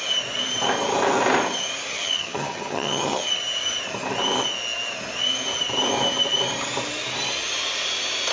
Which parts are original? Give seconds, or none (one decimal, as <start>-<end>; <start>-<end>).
0.0-1.9; 3.3-8.3